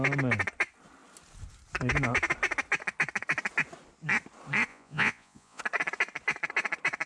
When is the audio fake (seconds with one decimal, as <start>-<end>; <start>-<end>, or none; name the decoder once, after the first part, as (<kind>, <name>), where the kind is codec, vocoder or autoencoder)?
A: 4.7-5.6 (vocoder, Vocos)